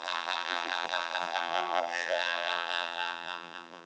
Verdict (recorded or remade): remade